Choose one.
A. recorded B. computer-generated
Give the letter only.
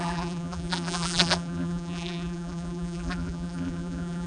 B